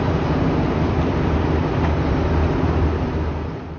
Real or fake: real